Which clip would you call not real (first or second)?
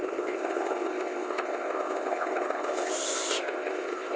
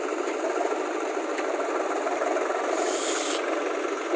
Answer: first